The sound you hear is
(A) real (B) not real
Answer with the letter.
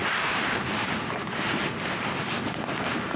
B